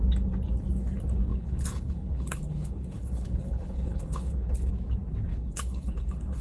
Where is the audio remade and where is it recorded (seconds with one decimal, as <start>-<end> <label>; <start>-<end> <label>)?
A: 0.0-1.3 recorded; 1.3-4.7 remade; 4.7-5.3 recorded; 5.3-6.4 remade